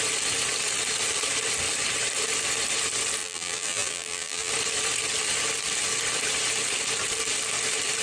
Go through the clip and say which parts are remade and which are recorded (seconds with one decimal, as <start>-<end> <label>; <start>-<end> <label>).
0.0-3.2 recorded; 3.2-4.5 remade; 4.5-8.0 recorded